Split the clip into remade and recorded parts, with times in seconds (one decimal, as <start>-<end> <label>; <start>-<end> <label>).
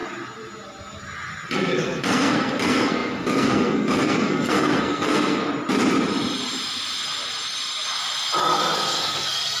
0.0-1.5 recorded; 1.5-5.4 remade; 5.4-8.4 recorded; 8.4-9.6 remade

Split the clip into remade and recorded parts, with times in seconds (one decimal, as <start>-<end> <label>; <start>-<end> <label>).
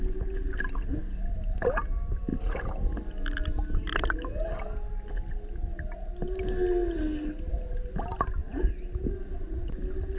0.0-10.2 recorded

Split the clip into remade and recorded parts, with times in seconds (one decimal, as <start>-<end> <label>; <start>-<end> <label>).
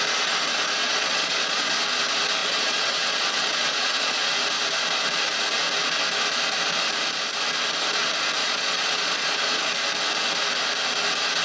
0.0-0.8 recorded; 0.8-1.7 remade; 1.7-2.4 recorded; 2.4-4.3 remade; 4.3-8.4 recorded; 8.4-9.7 remade; 9.7-11.4 recorded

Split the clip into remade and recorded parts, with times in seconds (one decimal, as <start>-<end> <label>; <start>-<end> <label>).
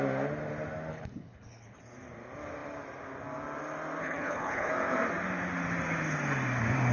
0.0-0.9 recorded; 0.9-1.8 remade; 1.8-4.0 recorded; 4.0-4.7 remade; 4.7-6.9 recorded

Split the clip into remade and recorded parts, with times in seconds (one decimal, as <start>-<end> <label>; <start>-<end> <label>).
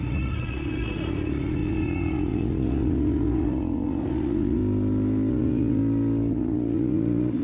0.0-4.6 remade; 4.6-5.3 recorded; 5.3-5.8 remade; 5.8-6.3 recorded; 6.3-7.4 remade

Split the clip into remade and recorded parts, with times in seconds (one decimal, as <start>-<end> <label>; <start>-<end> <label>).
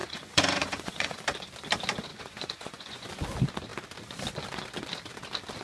0.0-1.2 remade; 1.2-2.1 recorded; 2.1-3.1 remade; 3.1-5.6 recorded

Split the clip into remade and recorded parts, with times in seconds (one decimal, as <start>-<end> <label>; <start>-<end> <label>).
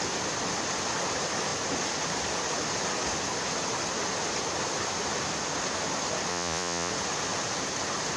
0.0-6.3 recorded; 6.3-6.9 remade; 6.9-8.2 recorded